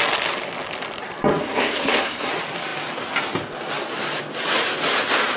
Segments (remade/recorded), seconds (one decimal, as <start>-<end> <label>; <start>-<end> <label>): 0.0-1.4 recorded; 1.4-2.3 remade; 2.3-5.4 recorded